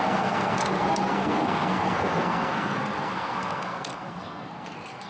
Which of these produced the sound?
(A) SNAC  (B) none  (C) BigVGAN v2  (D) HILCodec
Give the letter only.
A